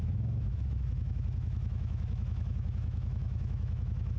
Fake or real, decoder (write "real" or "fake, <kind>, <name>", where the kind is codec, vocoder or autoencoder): fake, autoencoder, DAC-VAE